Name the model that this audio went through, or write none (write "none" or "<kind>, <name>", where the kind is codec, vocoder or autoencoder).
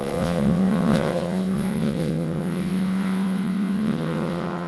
vocoder, WaveNeXt